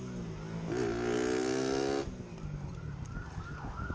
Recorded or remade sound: recorded